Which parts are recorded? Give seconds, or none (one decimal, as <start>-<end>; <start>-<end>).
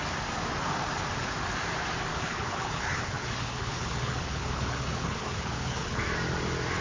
0.0-2.1; 6.0-6.8